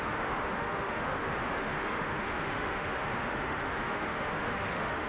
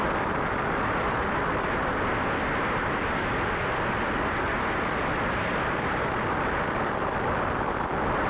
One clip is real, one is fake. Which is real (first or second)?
second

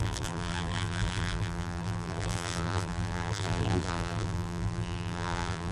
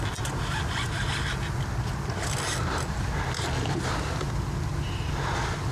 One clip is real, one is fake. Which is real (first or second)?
second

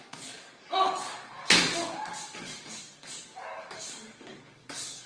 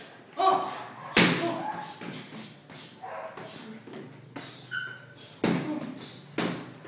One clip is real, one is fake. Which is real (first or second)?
second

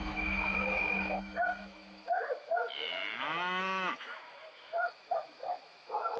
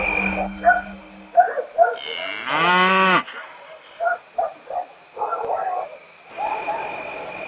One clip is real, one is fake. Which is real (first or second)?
second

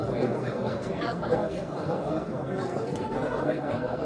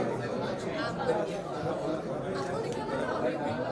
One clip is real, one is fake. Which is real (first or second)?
second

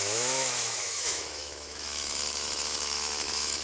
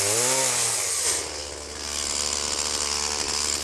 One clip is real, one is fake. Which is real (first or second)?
second